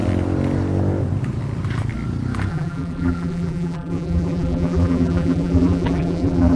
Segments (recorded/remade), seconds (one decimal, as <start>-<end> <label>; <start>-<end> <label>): 0.0-2.5 recorded; 2.5-6.6 remade